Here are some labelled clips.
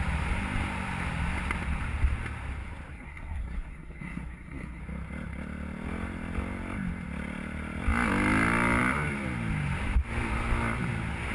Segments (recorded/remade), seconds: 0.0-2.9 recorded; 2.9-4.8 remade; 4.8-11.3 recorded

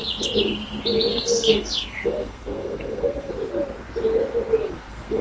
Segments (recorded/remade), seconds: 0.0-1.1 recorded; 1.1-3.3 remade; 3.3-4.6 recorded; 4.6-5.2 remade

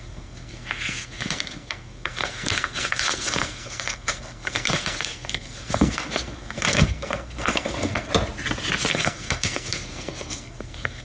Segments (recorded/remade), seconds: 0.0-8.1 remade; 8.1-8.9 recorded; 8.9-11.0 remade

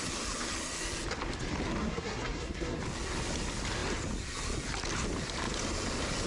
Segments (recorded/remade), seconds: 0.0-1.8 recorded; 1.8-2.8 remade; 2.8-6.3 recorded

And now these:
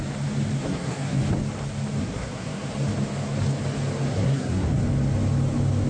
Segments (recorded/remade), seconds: 0.0-0.6 recorded; 0.6-1.2 remade; 1.2-2.0 recorded; 2.0-2.7 remade; 2.7-4.1 recorded; 4.1-4.8 remade; 4.8-5.9 recorded

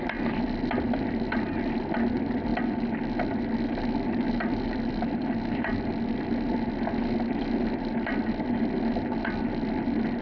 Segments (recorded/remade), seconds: 0.0-10.2 recorded

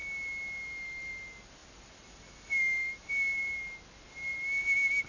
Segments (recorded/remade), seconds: 0.0-5.1 recorded